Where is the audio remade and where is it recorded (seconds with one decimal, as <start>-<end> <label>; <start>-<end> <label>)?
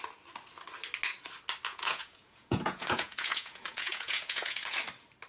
0.0-1.7 recorded; 1.7-4.8 remade; 4.8-5.3 recorded